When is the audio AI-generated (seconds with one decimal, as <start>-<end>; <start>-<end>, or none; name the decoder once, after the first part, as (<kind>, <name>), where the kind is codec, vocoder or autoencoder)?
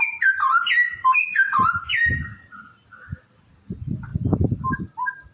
1.3-3.5 (vocoder, BigVGAN v2)